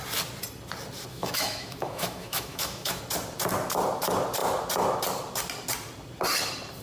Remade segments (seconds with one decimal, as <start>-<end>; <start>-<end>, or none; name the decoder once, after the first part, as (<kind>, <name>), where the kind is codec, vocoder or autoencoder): 1.1-3.0 (autoencoder, DAC-VAE)